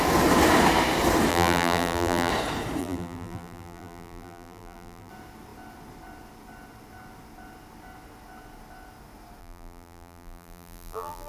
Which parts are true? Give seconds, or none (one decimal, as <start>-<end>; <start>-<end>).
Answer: 0.0-1.3; 2.3-2.8; 5.1-9.4